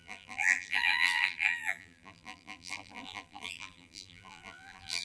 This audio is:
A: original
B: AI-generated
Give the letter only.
B